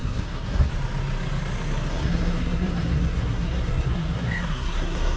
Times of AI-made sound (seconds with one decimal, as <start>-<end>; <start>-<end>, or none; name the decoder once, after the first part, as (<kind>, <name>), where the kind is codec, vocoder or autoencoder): 0.0-0.7 (codec, SNAC); 1.9-5.2